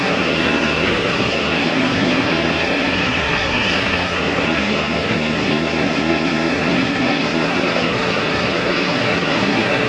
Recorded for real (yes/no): no